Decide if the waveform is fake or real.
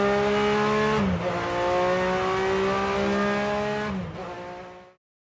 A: real